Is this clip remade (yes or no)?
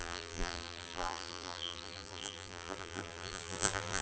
yes